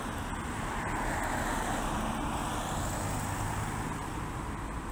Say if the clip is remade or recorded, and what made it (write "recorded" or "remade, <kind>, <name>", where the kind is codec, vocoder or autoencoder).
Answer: recorded